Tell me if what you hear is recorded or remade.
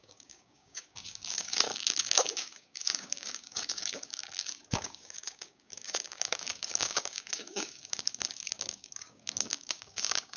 remade